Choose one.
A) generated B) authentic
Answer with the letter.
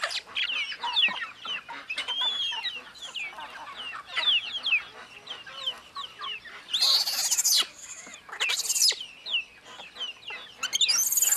B